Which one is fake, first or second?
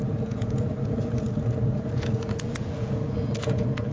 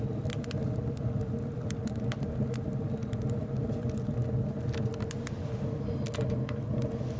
first